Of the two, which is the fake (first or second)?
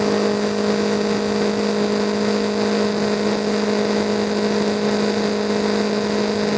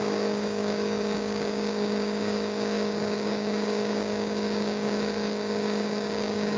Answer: second